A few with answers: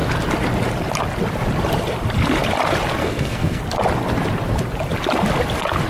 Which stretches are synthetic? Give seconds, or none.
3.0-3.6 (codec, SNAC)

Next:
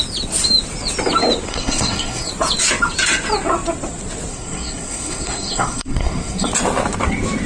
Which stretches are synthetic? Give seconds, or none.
1.5-2.3 (codec, SNAC); 4.3-6.5

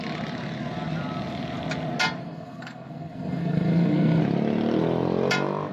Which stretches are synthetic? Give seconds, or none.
2.2-4.2 (codec, SNAC)

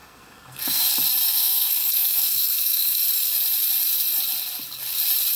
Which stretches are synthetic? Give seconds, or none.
0.0-0.9 (codec, SNAC); 1.3-3.0

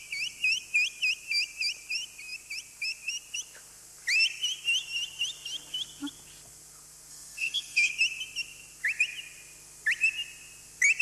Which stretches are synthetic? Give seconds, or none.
7.1-7.9 (codec, SNAC)

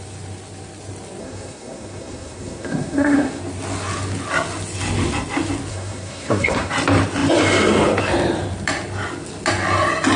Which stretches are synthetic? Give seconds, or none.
1.2-3.4 (codec, SNAC); 5.7-6.7

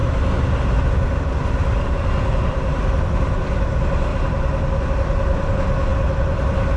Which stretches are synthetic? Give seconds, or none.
none